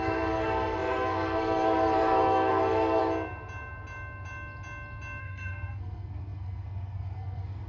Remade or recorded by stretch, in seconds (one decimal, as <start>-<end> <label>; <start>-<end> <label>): 0.0-3.0 remade; 3.0-5.2 recorded; 5.2-7.7 remade